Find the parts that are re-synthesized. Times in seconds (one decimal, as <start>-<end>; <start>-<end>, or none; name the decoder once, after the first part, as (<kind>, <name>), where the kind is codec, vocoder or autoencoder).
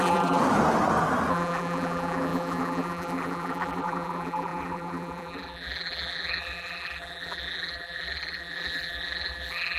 0.0-0.4 (vocoder, BigVGAN v2); 1.3-9.8